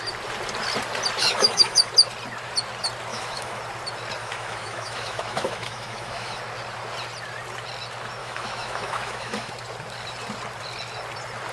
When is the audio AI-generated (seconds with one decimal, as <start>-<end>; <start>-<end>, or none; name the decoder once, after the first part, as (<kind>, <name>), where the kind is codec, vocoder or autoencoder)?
1.2-1.9 (autoencoder, DAC-VAE); 3.1-3.6; 4.2-6.4; 8.2-9.5